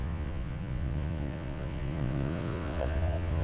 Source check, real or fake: fake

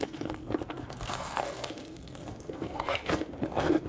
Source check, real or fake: fake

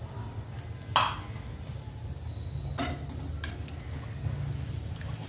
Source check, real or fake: real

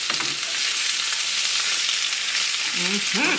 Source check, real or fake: real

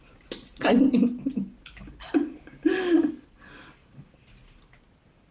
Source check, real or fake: real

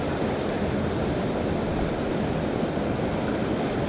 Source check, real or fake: real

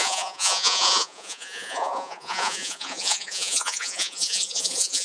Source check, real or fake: fake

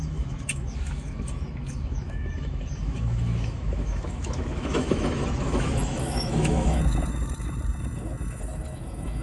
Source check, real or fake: fake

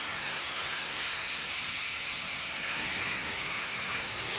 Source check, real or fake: fake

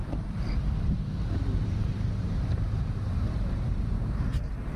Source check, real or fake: fake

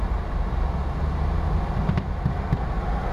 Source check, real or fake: real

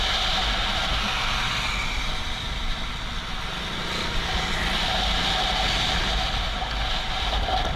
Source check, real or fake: real